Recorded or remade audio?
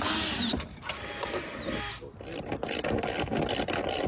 recorded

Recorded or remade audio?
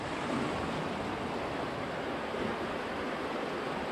recorded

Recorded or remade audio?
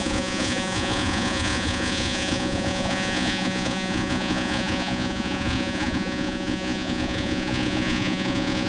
remade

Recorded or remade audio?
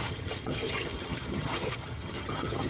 remade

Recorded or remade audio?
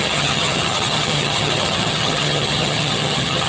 remade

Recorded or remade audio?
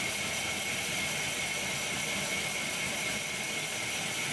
recorded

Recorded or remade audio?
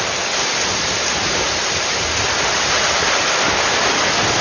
recorded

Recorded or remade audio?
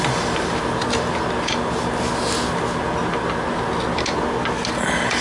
recorded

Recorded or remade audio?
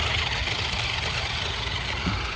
recorded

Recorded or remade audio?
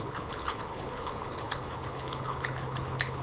remade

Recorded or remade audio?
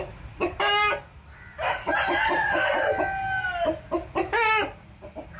recorded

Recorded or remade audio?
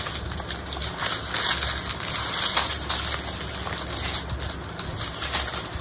recorded